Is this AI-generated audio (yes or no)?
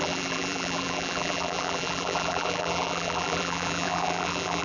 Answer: yes